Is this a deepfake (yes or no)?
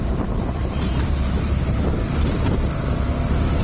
yes